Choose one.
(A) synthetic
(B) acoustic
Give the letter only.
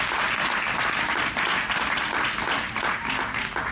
B